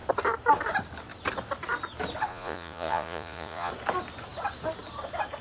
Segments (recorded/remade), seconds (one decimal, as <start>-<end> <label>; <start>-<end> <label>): 0.0-2.3 recorded; 2.3-3.7 remade; 3.7-5.4 recorded